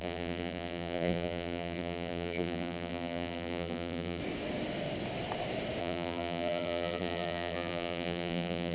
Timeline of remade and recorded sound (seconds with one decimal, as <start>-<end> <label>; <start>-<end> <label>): 0.0-4.2 remade; 4.2-5.8 recorded; 5.8-8.7 remade